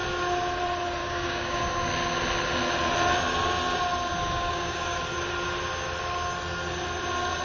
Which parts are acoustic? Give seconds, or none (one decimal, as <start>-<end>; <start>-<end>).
0.0-1.0; 1.6-4.2; 5.0-7.4

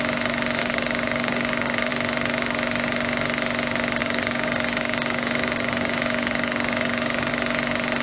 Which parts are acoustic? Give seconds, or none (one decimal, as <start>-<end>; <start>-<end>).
0.0-0.6; 1.9-4.0; 7.3-8.0

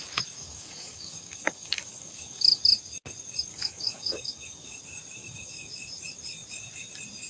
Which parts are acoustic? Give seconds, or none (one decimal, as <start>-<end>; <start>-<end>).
0.0-0.4; 2.6-3.5; 4.8-5.2; 5.7-7.3

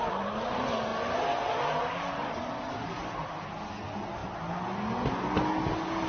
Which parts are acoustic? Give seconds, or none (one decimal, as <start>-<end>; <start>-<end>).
0.0-6.1